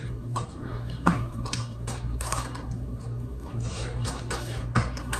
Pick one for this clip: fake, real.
fake